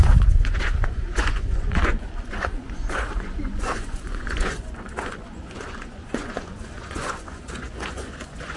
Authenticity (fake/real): fake